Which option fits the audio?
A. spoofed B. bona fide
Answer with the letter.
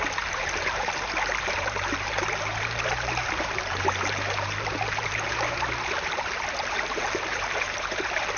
A